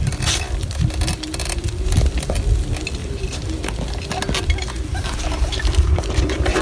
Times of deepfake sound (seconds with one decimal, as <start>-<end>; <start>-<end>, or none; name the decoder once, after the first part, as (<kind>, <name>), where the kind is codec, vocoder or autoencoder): 3.0-3.6 (vocoder, BigVGAN v2); 4.9-6.6

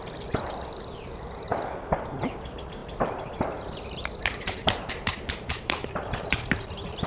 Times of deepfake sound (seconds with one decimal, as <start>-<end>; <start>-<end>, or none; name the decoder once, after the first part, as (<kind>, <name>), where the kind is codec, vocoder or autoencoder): 0.0-1.5 (vocoder, BigVGAN v2); 2.0-7.1

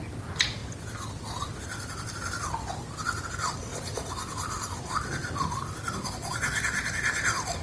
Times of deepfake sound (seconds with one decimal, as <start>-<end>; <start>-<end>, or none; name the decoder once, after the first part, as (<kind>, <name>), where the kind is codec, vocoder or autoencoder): 3.7-4.8 (vocoder, BigVGAN v2)